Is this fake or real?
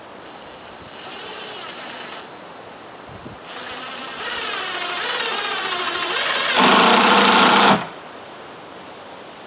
real